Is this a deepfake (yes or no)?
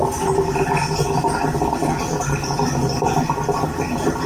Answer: no